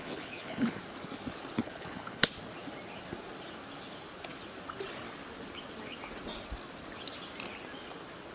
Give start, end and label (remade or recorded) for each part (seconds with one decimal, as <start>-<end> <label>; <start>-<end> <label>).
0.0-0.8 remade; 0.8-1.6 recorded; 1.6-2.2 remade; 2.2-8.3 recorded